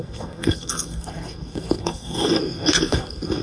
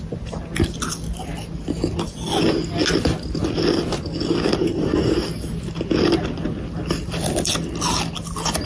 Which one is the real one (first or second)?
second